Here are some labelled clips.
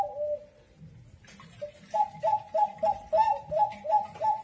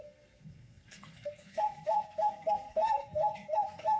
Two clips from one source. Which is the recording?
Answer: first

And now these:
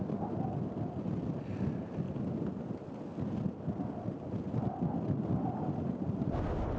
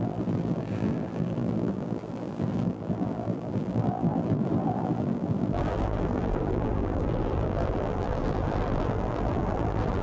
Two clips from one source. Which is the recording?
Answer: first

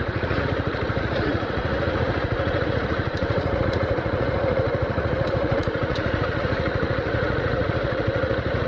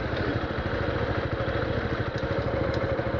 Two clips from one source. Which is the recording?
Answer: second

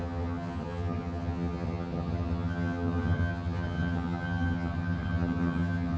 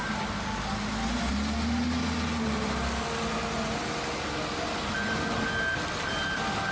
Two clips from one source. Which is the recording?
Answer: second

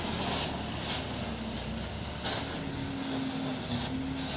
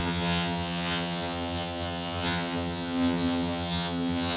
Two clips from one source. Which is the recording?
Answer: first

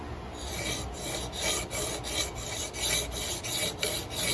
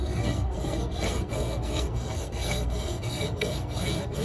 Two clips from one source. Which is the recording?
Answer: first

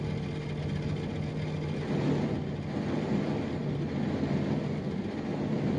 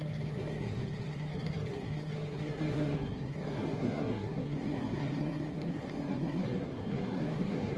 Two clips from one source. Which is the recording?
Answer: first